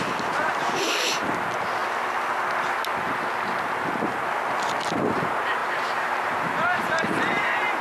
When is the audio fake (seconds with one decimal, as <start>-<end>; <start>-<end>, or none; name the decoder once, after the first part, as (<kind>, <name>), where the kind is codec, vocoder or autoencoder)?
5.6-7.8 (vocoder, BigVGAN v2)